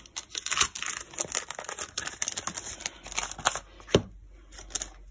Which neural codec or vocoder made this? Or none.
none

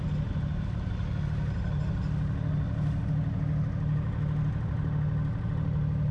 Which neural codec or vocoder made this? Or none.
none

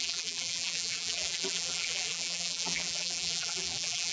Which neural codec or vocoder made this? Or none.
vocoder, BigVGAN v2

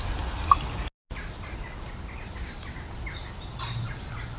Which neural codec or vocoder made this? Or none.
none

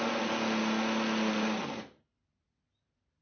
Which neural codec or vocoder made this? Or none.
none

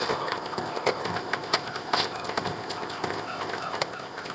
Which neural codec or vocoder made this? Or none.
codec, ZipCodec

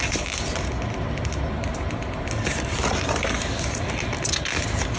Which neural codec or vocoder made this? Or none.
none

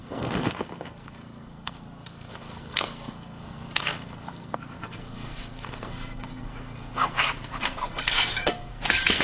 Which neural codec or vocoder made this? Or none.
codec, SNAC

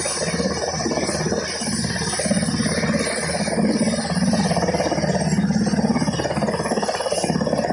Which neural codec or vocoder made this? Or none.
none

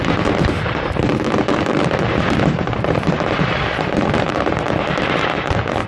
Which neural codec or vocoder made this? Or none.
vocoder, BigVGAN v2